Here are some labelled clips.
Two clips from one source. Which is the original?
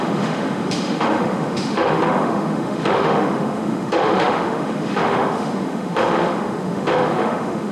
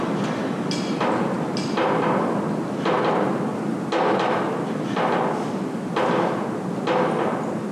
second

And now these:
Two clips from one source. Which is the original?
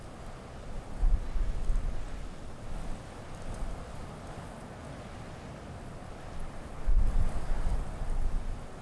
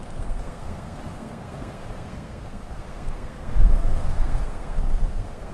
first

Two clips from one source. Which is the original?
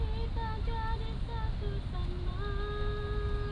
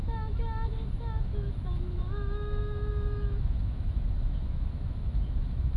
first